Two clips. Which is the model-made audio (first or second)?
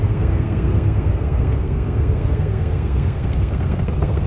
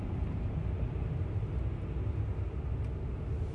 first